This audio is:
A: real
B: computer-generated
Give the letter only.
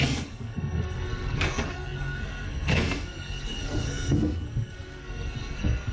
B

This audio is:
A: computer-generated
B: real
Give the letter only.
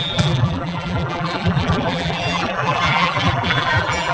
A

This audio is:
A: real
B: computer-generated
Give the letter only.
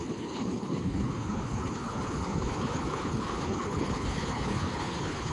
B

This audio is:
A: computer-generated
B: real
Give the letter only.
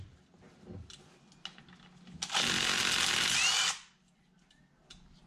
B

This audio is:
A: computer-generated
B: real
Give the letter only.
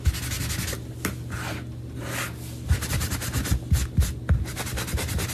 B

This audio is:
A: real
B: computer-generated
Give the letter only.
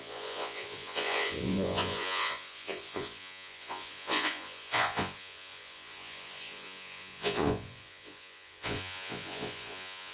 B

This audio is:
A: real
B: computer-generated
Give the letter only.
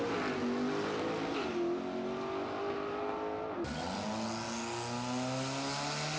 A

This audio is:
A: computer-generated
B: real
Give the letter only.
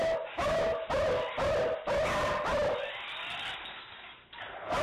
B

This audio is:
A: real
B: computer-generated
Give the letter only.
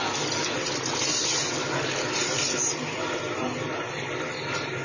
A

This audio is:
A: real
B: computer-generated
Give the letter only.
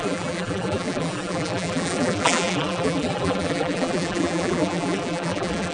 B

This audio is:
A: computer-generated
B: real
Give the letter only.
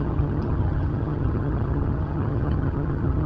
A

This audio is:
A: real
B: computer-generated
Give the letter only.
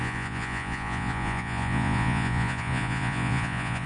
B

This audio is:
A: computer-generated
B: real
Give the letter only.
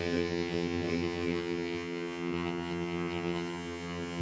A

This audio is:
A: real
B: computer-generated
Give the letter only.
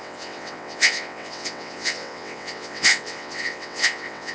B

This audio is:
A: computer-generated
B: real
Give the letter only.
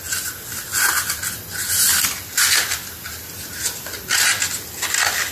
B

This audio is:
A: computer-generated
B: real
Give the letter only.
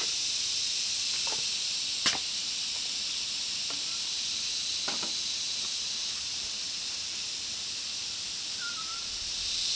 B